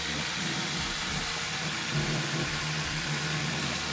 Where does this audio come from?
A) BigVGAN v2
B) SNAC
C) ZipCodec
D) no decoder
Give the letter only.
A